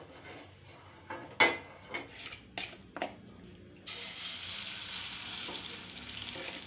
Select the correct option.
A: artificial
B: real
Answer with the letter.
B